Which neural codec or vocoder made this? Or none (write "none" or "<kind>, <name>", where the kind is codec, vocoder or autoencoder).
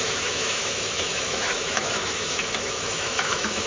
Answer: autoencoder, DAC-VAE